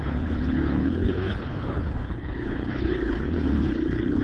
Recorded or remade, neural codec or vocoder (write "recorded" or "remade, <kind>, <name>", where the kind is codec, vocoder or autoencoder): remade, codec, HILCodec